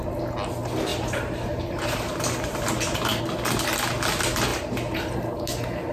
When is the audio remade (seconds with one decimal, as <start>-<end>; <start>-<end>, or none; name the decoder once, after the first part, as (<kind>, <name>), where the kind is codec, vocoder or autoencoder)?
0.9-3.2 (vocoder, BigVGAN v2); 4.5-5.1